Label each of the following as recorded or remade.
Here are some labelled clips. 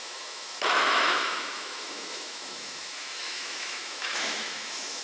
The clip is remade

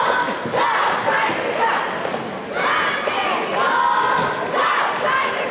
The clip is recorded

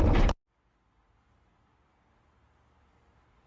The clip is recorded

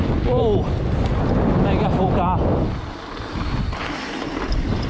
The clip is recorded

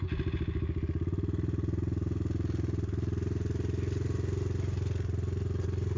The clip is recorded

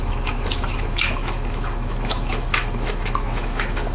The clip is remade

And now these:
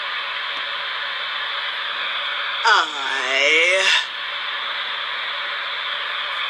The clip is recorded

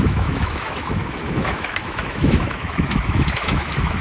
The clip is remade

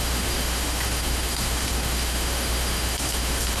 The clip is remade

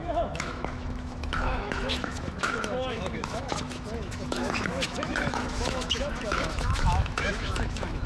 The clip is remade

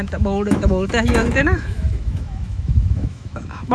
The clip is remade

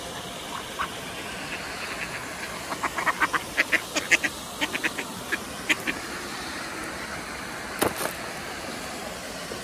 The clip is recorded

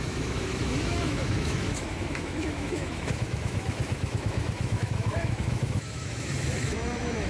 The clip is remade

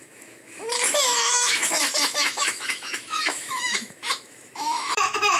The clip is remade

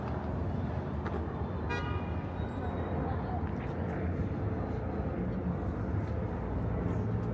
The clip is recorded